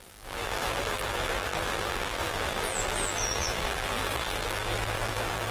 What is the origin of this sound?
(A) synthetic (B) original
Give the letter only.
A